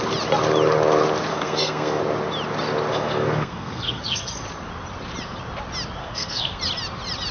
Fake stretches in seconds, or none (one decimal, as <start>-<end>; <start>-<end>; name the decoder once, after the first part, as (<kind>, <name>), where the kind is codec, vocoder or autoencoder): 1.3-2.0 (codec, SNAC); 2.9-4.4; 6.0-6.6